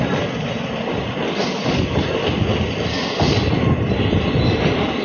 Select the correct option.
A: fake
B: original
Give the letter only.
B